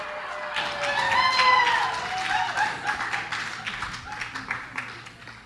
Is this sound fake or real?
real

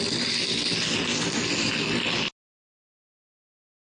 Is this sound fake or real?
real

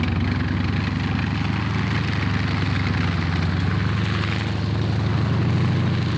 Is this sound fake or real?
real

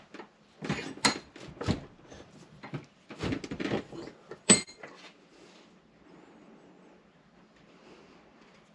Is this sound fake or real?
real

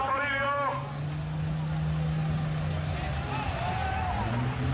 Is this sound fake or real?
real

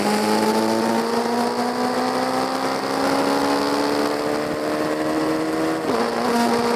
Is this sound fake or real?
real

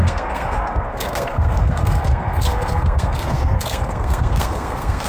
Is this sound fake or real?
fake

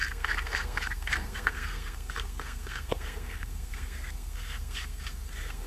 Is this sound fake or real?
fake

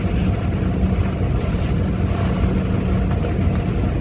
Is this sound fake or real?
real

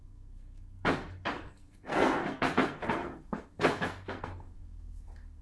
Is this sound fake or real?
fake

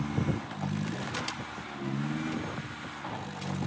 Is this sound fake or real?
real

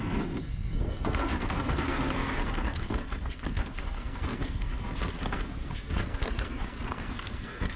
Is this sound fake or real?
fake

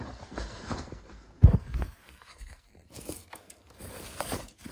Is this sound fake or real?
fake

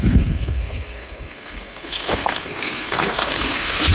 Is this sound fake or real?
fake